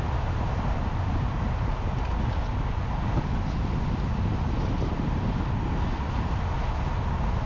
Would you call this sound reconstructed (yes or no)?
no